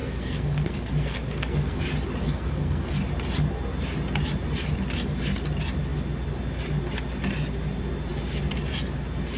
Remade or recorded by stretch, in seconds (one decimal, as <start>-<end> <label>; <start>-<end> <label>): 0.0-1.8 remade; 1.8-2.2 recorded; 2.2-2.9 remade; 2.9-9.4 recorded